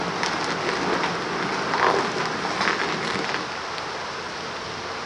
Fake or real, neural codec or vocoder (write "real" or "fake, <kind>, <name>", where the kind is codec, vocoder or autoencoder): real